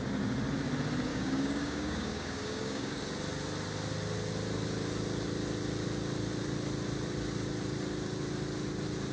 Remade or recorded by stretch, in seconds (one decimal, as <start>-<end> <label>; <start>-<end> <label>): 0.0-1.1 recorded; 1.1-3.0 remade; 3.0-9.1 recorded